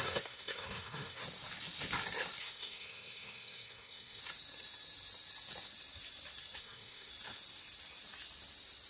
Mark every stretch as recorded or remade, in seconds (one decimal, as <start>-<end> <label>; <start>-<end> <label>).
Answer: 0.0-1.2 remade; 1.2-2.4 recorded; 2.4-4.2 remade; 4.2-6.6 recorded; 6.6-7.1 remade; 7.1-8.9 recorded